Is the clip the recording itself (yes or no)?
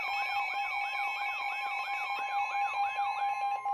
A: yes